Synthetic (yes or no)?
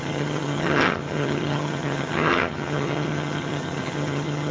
yes